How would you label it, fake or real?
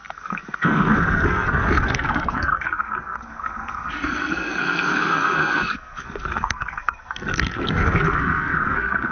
fake